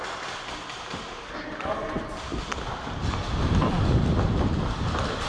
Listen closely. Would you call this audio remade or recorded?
recorded